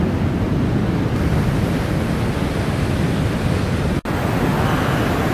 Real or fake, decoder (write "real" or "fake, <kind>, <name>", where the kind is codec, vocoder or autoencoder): real